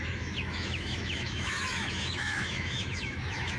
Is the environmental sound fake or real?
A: fake